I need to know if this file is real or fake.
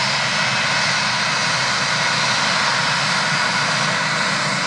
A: real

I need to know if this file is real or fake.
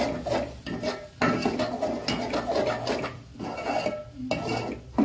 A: real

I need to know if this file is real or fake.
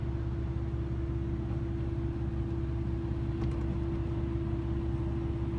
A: real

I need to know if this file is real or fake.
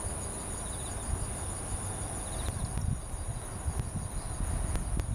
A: real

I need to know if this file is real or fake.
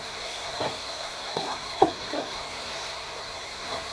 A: fake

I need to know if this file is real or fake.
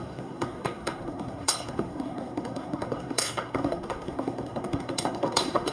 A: fake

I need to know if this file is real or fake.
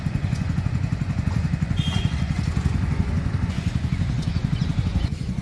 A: fake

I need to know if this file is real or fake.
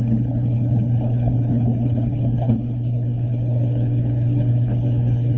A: fake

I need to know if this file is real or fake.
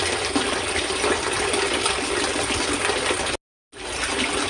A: real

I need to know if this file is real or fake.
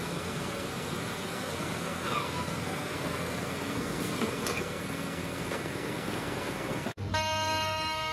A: fake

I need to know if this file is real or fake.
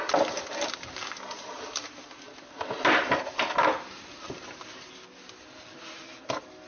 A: real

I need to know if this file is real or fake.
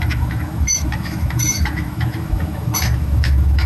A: fake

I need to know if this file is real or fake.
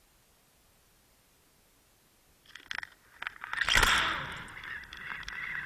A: real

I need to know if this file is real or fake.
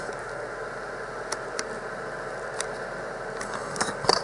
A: real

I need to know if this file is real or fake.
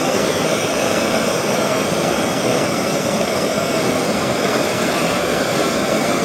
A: fake